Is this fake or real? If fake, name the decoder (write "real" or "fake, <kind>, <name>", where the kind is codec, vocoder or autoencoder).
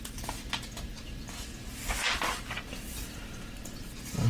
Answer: real